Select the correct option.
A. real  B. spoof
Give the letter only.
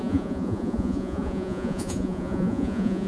B